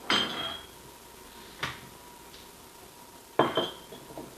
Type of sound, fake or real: real